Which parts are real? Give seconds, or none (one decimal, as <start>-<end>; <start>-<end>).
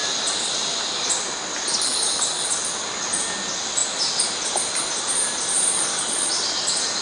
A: 0.0-7.0